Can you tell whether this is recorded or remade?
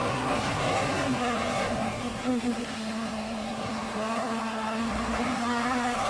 remade